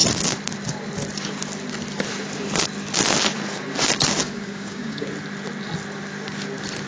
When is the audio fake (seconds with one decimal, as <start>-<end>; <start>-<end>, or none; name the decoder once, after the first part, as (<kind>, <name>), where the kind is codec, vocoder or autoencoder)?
4.2-5.1 (codec, DAC)